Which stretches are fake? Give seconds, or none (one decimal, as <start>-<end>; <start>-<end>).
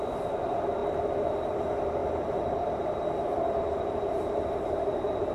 0.0-5.3